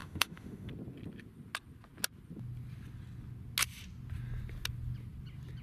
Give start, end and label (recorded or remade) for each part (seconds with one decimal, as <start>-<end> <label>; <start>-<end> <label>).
0.0-0.7 remade; 0.7-5.6 recorded